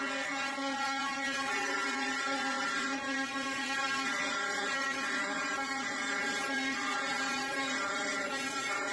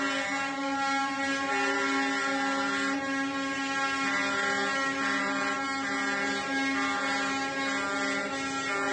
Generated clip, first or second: first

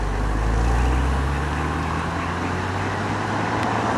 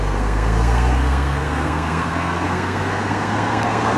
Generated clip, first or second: second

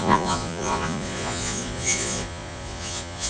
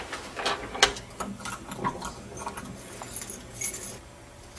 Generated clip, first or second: first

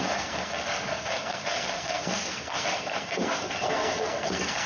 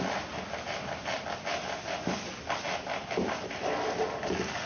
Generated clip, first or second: first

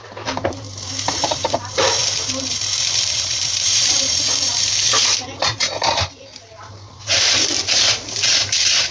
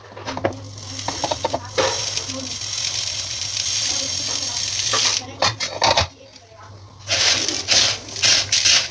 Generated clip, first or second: first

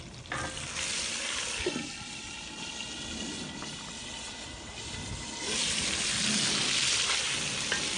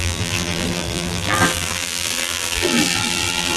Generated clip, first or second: second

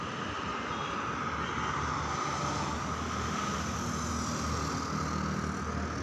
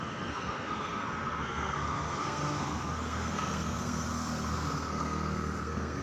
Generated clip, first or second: second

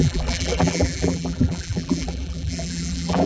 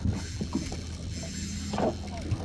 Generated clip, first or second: first